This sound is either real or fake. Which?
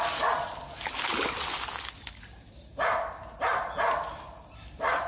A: real